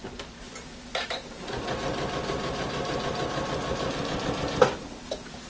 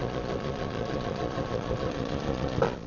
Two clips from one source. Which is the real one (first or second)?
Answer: first